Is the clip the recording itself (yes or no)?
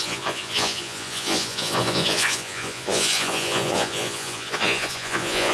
no